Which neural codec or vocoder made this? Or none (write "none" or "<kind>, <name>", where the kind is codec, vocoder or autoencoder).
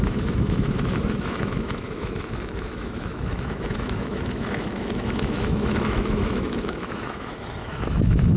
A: autoencoder, DAC-VAE